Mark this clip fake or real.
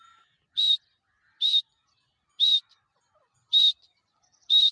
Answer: real